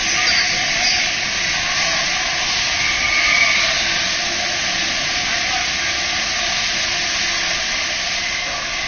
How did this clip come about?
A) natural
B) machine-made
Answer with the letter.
A